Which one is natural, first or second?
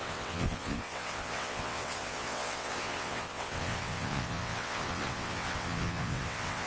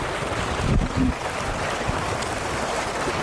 second